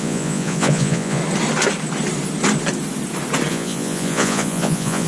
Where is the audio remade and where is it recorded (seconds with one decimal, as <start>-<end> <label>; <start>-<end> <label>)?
0.0-1.2 remade; 1.2-3.5 recorded; 3.5-5.1 remade